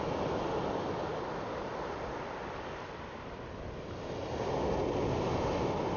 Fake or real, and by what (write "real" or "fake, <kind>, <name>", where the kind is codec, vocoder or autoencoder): real